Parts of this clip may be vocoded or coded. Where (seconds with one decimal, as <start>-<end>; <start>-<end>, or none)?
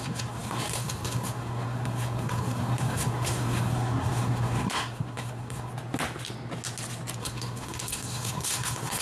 0.0-5.7; 7.2-9.0